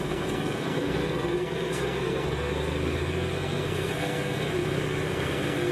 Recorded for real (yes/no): no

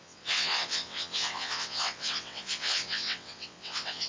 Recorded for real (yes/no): no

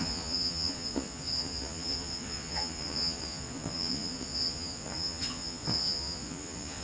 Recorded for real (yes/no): no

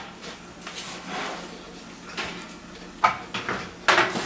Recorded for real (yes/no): yes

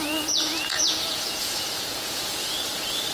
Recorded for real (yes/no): no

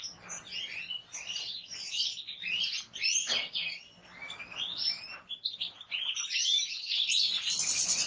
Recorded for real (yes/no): yes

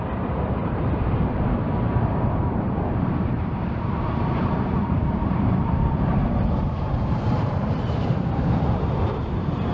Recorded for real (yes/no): no